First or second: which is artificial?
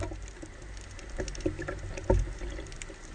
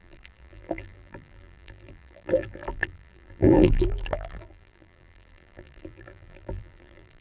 second